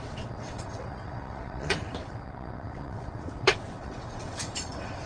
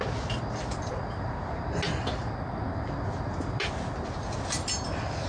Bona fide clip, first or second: second